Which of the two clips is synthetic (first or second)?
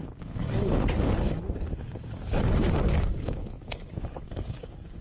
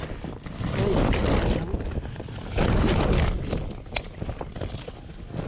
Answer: first